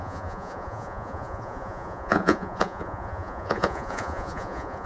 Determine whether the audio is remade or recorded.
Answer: remade